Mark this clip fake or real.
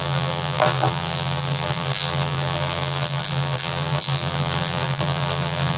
fake